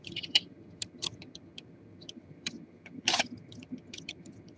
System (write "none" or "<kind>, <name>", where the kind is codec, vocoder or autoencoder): vocoder, HiFi-GAN